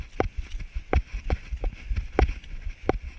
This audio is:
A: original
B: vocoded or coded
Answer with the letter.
A